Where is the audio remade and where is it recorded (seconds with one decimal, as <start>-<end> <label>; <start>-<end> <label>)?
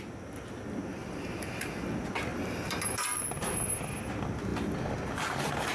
0.0-5.7 recorded